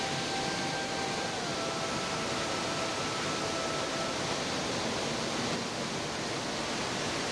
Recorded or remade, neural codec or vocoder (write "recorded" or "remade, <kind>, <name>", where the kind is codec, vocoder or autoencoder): recorded